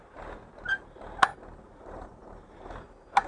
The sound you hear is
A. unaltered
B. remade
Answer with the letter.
A